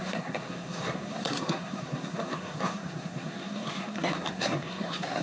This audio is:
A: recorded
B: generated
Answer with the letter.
B